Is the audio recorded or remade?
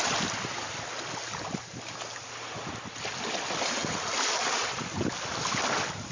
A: recorded